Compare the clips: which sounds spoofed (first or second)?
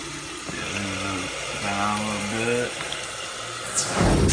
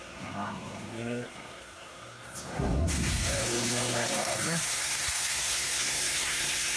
second